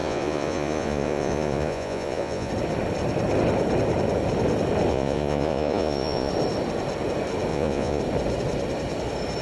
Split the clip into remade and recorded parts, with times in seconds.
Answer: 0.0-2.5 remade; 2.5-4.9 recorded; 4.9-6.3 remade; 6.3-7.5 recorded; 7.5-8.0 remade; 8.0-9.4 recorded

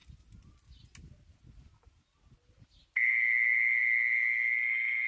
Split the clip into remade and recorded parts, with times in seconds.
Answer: 0.0-5.1 recorded

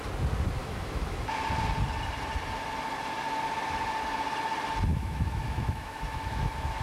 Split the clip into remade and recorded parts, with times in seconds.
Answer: 0.0-0.6 recorded; 0.6-1.3 remade; 1.3-4.9 recorded; 4.9-6.8 remade